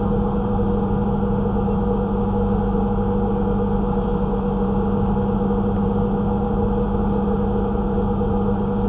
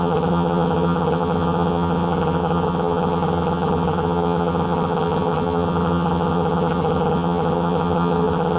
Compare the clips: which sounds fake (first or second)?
second